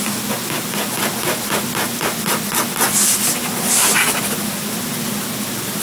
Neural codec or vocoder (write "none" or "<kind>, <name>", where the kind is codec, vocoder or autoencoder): none